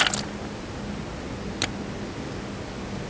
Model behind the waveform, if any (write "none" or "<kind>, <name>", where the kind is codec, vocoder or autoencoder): none